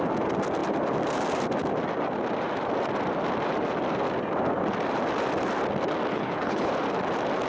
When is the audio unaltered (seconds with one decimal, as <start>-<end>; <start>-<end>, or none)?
0.0-6.1; 6.7-7.5